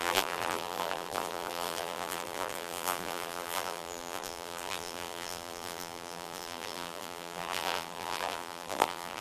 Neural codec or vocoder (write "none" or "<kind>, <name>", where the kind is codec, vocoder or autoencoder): vocoder, BigVGAN v2